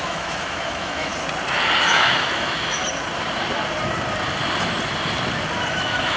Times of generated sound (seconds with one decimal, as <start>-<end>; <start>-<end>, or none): 0.0-1.1; 1.8-2.8; 5.7-6.2